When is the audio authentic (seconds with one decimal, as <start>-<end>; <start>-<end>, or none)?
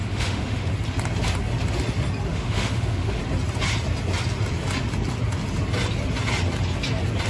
0.7-2.3; 3.2-7.3